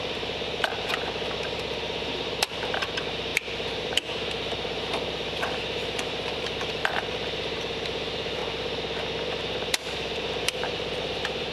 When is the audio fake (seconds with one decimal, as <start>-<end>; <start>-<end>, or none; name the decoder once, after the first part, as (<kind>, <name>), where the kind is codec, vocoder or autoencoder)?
0.0-8.4 (vocoder, BigVGAN v2); 9.4-11.5

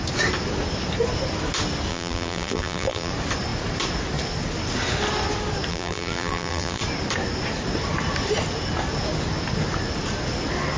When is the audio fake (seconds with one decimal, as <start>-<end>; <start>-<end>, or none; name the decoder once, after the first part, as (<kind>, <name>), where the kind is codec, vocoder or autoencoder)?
1.9-3.1 (vocoder, BigVGAN v2); 5.7-6.8

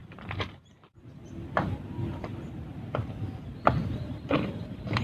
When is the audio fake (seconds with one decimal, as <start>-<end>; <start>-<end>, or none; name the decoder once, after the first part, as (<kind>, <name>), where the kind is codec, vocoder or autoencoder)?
0.0-2.3 (vocoder, BigVGAN v2); 3.4-5.0

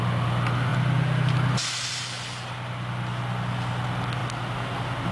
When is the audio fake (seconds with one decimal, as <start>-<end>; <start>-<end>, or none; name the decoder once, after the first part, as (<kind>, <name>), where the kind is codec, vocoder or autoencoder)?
none